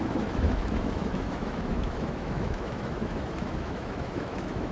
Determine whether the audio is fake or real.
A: fake